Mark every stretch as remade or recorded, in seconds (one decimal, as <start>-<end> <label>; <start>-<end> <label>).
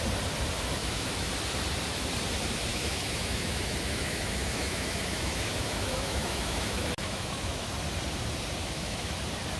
0.0-0.8 recorded; 0.8-1.3 remade; 1.3-2.7 recorded; 2.7-7.7 remade; 7.7-8.6 recorded; 8.6-9.2 remade; 9.2-9.6 recorded